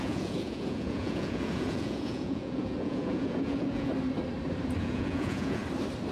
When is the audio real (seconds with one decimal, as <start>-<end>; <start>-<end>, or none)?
3.9-4.8; 5.6-6.1